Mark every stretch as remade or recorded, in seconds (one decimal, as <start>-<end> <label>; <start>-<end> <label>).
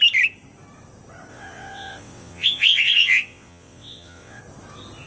0.0-1.3 recorded; 1.3-4.4 remade; 4.4-5.1 recorded